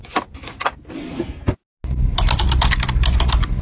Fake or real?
real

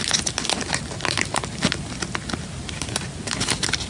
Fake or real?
real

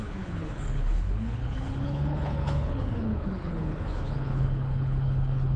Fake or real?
fake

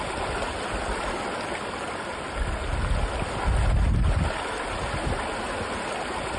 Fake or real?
real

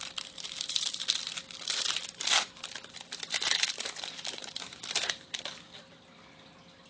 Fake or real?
real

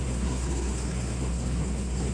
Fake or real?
fake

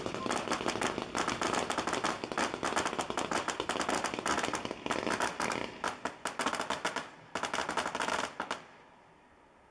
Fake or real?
real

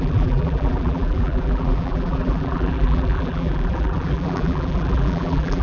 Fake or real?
fake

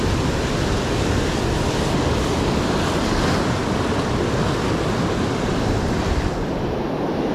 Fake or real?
real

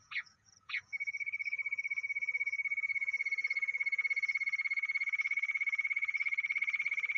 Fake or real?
fake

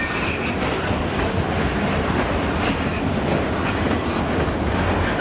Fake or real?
real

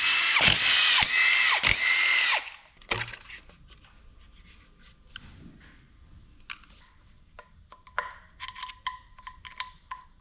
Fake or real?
real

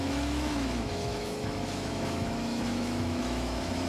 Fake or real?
fake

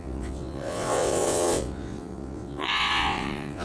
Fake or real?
fake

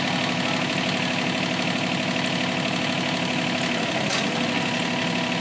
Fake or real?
real